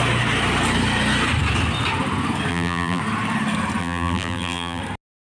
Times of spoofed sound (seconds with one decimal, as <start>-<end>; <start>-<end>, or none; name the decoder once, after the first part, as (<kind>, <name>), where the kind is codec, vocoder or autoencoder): 2.5-3.0 (vocoder, BigVGAN v2); 3.8-4.8